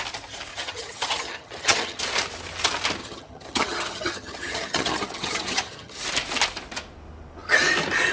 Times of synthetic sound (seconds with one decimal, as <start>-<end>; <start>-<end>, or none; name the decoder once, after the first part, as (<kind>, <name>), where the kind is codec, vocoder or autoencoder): 0.5-2.0 (vocoder, HiFi-GAN); 3.0-6.0

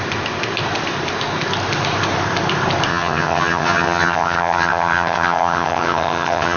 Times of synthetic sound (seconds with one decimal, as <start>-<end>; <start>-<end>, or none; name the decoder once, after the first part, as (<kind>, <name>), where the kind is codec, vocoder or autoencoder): 2.9-6.6 (vocoder, HiFi-GAN)